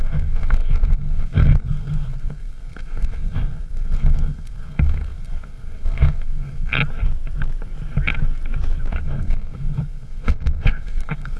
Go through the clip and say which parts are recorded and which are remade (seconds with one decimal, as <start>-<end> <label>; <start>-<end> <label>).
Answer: 0.0-6.8 remade; 6.8-8.9 recorded; 8.9-11.4 remade